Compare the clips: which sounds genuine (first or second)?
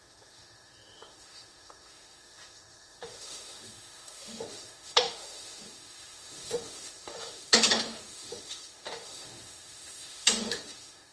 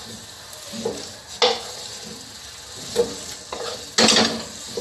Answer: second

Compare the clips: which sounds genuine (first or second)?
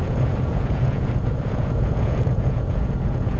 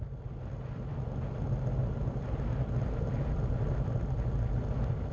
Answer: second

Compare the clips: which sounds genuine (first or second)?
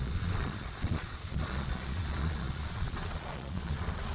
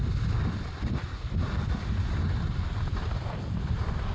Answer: second